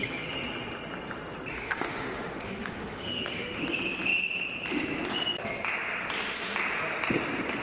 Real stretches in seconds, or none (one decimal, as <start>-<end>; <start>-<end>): 0.0-1.5; 3.6-7.6